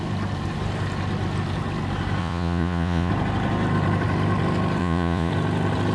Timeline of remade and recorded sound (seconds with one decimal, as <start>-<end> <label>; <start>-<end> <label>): 0.0-2.2 recorded; 2.2-3.1 remade; 3.1-4.8 recorded; 4.8-5.3 remade; 5.3-5.9 recorded